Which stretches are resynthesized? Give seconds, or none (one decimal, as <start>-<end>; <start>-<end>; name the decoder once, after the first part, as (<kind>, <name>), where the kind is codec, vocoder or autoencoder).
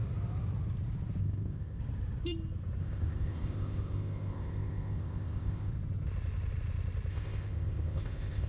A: 1.2-1.8 (codec, ZipCodec); 2.8-5.7; 7.1-8.5